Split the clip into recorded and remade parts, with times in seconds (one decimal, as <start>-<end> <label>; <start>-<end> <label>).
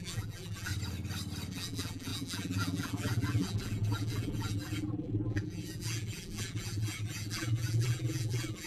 0.0-0.7 remade; 0.7-1.5 recorded; 1.5-8.7 remade